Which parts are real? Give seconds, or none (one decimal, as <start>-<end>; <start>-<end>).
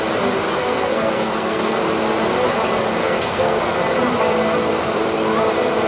0.0-0.6; 1.8-3.0; 3.6-5.9